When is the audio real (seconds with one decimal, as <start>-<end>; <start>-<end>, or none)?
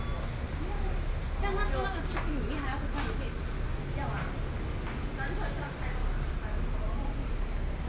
0.0-7.9